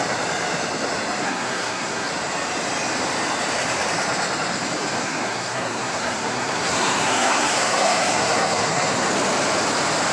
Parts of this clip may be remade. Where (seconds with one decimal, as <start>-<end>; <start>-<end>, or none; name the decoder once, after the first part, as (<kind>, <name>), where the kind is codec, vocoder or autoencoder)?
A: 1.2-2.1 (codec, SNAC); 5.0-9.1